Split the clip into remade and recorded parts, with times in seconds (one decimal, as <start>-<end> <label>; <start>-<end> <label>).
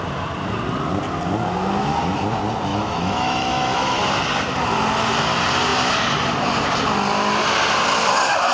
0.0-2.7 recorded; 2.7-4.0 remade; 4.0-8.5 recorded